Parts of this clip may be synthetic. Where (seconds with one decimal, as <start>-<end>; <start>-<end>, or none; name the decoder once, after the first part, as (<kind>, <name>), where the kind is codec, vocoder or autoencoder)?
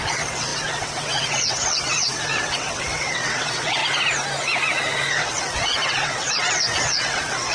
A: 0.0-3.8 (vocoder, WaveNeXt); 5.1-7.5